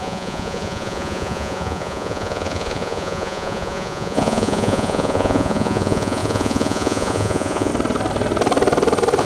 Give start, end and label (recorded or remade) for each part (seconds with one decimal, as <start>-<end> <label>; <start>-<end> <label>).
0.0-7.7 remade; 7.7-9.2 recorded